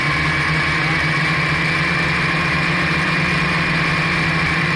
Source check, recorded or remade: remade